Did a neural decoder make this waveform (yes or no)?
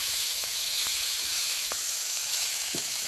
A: yes